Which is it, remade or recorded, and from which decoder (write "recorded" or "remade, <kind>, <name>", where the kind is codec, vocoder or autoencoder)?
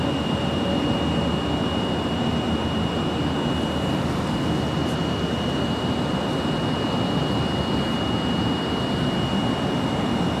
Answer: recorded